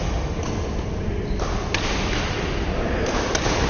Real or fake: real